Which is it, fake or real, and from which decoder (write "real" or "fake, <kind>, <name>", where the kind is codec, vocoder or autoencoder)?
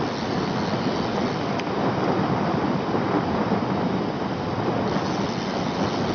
real